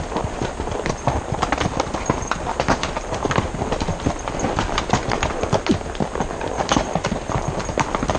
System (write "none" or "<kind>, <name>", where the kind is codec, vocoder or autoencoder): vocoder, BigVGAN v2